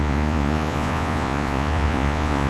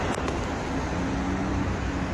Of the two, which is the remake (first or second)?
first